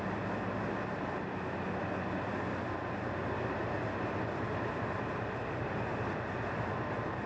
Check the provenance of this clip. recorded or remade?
recorded